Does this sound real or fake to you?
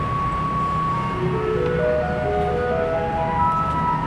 real